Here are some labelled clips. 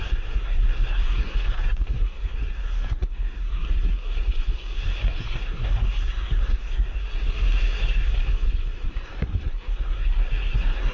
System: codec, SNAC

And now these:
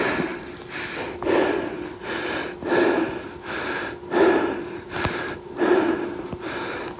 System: none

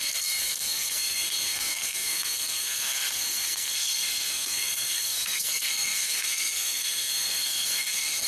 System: codec, SNAC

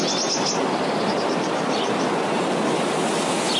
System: none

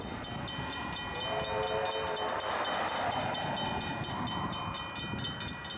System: none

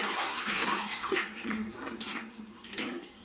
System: codec, SNAC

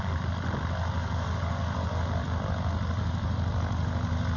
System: none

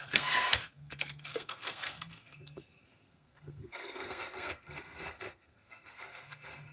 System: codec, SNAC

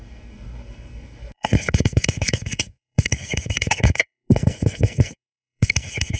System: codec, SNAC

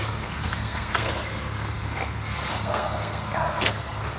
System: codec, SNAC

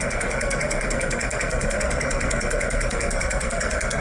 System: codec, SNAC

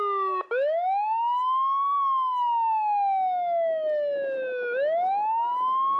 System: none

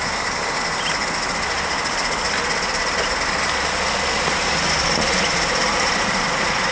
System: none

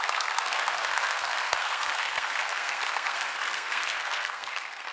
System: codec, SNAC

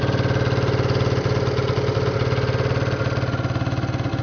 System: none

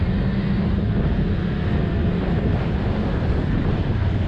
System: none